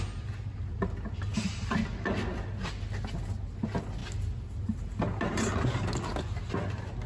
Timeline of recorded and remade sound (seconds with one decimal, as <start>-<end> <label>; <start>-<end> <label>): 0.0-7.1 recorded